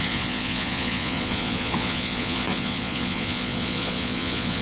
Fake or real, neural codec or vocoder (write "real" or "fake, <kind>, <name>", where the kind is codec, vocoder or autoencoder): fake, vocoder, Vocos